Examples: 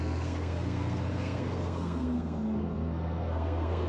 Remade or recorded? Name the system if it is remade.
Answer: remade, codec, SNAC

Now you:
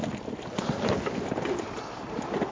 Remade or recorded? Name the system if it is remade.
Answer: recorded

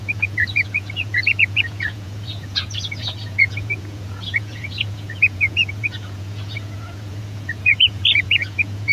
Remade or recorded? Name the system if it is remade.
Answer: remade, vocoder, Vocos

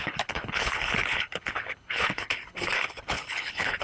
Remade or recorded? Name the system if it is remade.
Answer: remade, codec, HILCodec